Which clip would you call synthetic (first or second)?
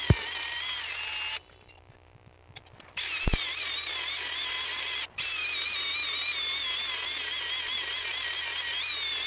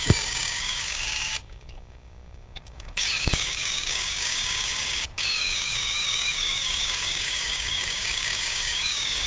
second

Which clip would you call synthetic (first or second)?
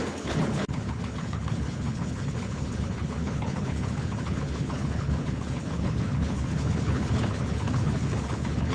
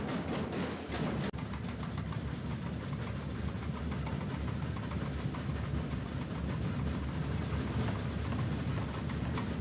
first